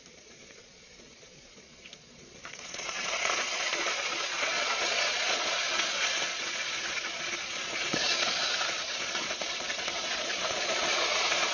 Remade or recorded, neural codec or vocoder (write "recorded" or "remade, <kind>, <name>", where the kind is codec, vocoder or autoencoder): remade, vocoder, Vocos